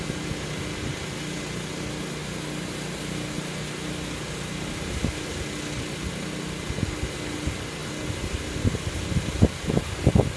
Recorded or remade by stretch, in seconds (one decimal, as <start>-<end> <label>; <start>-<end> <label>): 0.0-10.4 recorded